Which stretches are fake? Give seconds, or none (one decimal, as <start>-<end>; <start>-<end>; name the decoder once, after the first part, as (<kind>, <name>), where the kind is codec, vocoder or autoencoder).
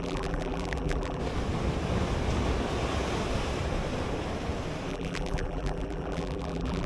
0.0-1.2 (vocoder, BigVGAN v2); 4.9-6.9